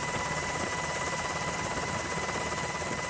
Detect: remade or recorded remade